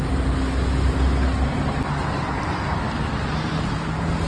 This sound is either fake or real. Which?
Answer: real